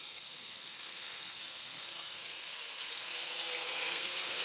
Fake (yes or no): yes